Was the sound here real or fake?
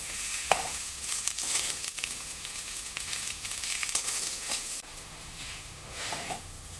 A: fake